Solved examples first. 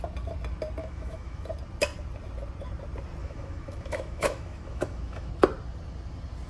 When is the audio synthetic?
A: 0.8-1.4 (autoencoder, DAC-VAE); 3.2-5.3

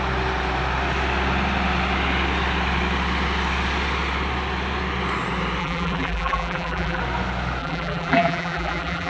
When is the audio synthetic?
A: 5.6-7.0 (vocoder, BigVGAN v2); 7.6-9.1

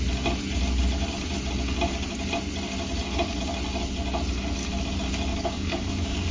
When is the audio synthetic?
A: 5.3-6.3 (codec, DAC)

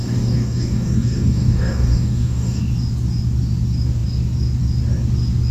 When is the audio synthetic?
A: 0.0-2.6 (codec, DAC)

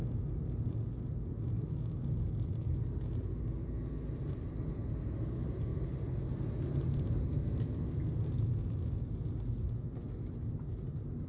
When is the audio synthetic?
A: none

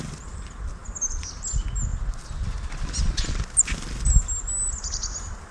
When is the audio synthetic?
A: none